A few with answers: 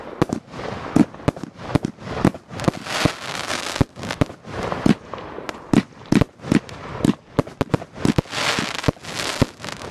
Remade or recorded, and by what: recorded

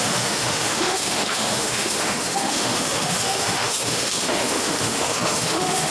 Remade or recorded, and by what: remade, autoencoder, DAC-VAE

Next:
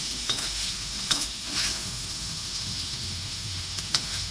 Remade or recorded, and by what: remade, autoencoder, DAC-VAE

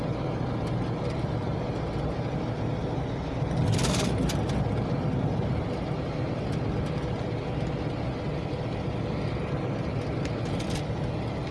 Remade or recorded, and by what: recorded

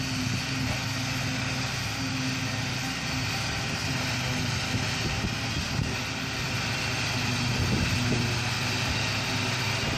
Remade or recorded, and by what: recorded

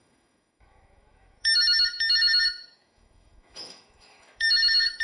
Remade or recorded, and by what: remade, autoencoder, DAC-VAE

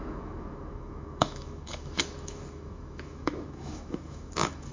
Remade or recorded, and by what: remade, autoencoder, DAC-VAE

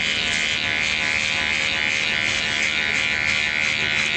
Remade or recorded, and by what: recorded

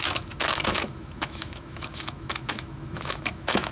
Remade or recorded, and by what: remade, autoencoder, DAC-VAE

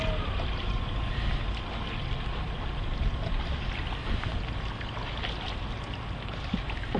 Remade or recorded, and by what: recorded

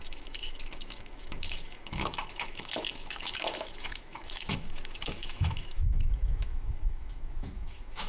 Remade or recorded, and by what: remade, autoencoder, DAC-VAE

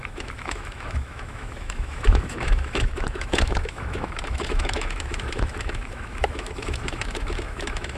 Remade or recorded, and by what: remade, autoencoder, DAC-VAE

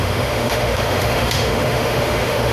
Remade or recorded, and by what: remade, autoencoder, DAC-VAE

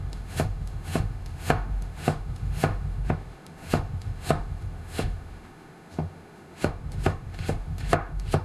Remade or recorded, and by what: remade, autoencoder, DAC-VAE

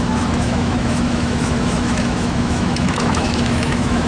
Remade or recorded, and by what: remade, autoencoder, DAC-VAE